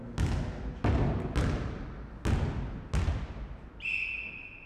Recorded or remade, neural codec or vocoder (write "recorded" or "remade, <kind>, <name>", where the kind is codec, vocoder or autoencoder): recorded